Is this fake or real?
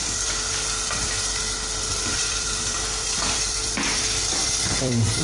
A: fake